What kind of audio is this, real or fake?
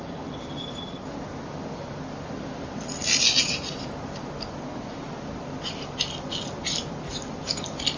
real